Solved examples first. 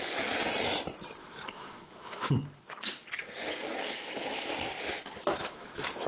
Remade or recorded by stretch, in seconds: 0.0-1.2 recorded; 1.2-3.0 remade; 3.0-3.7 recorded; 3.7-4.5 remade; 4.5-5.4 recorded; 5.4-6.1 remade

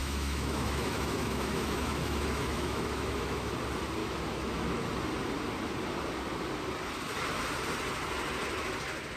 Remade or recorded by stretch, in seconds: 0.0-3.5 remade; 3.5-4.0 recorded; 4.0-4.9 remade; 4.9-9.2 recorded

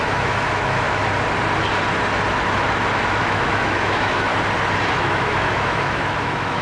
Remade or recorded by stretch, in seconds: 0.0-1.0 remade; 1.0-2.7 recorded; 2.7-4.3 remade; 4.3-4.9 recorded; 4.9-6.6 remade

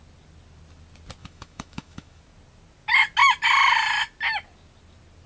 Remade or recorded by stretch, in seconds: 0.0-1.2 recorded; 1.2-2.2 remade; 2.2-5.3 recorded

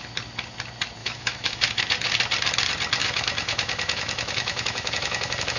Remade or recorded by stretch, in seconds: 0.0-1.0 recorded; 1.0-1.8 remade; 1.8-3.0 recorded; 3.0-5.6 remade